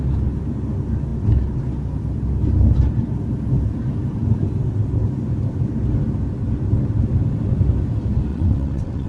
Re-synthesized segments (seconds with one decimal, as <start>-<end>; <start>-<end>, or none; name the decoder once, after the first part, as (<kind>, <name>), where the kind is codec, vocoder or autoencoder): 8.3-9.1 (vocoder, WaveNeXt)